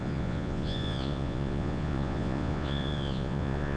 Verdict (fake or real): fake